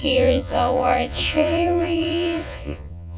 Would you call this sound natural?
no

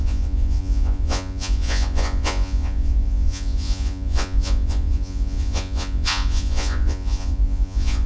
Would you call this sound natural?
no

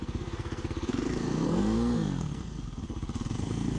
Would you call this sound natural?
no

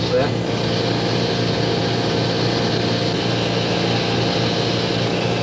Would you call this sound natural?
yes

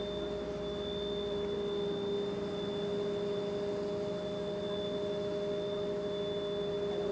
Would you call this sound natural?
yes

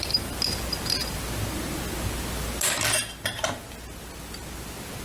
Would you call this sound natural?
yes